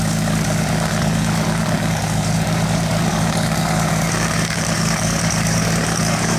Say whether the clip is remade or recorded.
remade